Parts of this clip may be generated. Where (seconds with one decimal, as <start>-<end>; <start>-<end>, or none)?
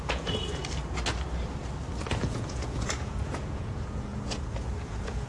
0.0-0.6; 2.1-5.3